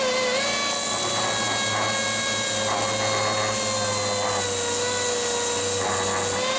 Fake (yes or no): no